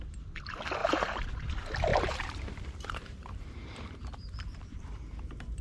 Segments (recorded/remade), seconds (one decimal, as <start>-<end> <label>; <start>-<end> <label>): 0.0-0.8 recorded; 0.8-1.5 remade; 1.5-1.9 recorded; 1.9-5.6 remade